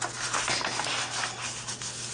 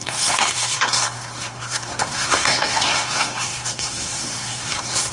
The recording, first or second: first